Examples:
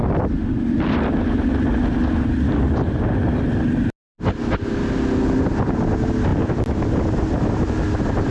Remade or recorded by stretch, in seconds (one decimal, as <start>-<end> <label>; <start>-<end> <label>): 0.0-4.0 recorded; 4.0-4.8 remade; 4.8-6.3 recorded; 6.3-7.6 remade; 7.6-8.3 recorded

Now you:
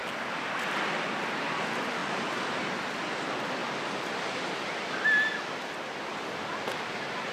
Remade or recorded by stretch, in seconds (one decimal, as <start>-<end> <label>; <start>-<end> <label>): 0.0-2.0 recorded; 2.0-2.7 remade; 2.7-7.3 recorded

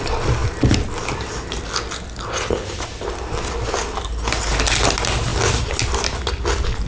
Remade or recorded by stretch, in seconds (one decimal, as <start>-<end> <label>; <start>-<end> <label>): 0.0-6.9 recorded